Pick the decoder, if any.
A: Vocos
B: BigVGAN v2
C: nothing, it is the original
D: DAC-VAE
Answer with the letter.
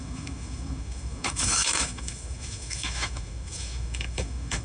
D